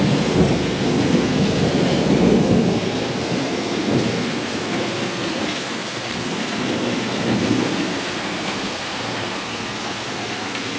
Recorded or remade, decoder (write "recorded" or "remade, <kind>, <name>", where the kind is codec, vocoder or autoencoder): remade, codec, SNAC